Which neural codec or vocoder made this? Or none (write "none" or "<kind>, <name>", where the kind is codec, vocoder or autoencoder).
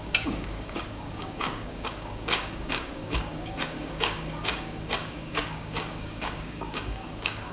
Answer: codec, DAC